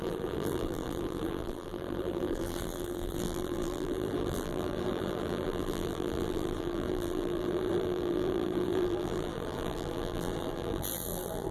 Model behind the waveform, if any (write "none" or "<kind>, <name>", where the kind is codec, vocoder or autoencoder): vocoder, BigVGAN v2